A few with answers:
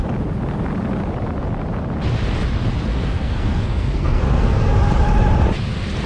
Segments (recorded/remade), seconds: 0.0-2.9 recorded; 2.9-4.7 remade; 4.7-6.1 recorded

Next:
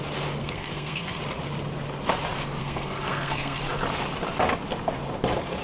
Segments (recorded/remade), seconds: 0.0-0.4 recorded; 0.4-1.2 remade; 1.2-2.6 recorded; 2.6-3.6 remade; 3.6-5.6 recorded

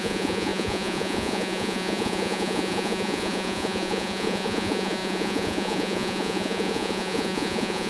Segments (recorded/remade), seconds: 0.0-7.9 remade